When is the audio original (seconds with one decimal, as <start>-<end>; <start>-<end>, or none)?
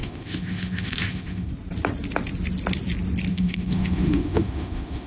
1.5-3.3